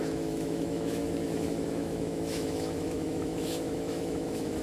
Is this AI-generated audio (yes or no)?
yes